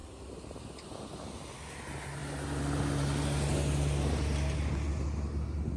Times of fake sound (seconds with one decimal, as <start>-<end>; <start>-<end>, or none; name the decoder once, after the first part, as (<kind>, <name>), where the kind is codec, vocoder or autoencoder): none